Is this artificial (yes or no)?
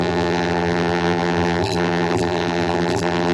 yes